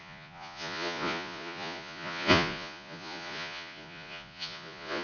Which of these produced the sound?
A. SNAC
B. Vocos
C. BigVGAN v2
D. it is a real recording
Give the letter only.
B